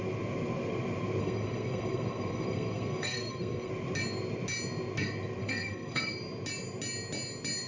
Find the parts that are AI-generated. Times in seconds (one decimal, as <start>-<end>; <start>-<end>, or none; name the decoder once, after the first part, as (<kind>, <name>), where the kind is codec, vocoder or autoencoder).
1.2-3.7 (codec, SNAC); 5.4-6.0